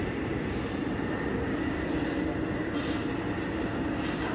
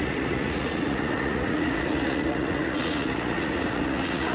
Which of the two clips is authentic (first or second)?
first